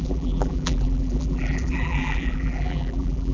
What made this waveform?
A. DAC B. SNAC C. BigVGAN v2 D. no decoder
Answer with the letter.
C